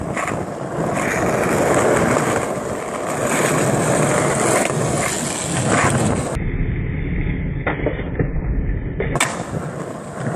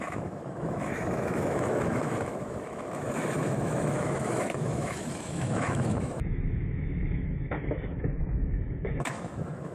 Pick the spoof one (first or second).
second